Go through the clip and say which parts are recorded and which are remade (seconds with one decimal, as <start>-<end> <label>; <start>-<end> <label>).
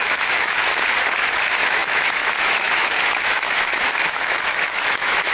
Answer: 0.0-0.7 remade; 0.7-1.2 recorded; 1.2-5.3 remade